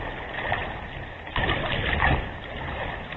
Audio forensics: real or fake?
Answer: real